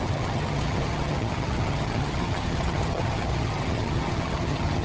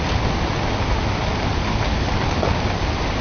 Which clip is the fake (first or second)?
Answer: first